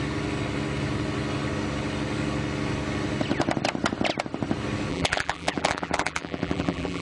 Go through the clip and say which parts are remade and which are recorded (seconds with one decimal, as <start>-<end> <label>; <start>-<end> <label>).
0.0-4.9 recorded; 4.9-7.0 remade